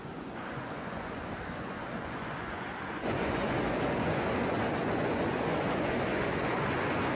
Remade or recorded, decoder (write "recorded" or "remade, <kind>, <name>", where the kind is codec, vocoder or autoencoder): remade, vocoder, Vocos